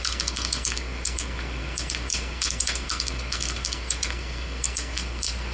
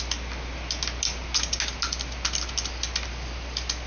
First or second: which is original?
second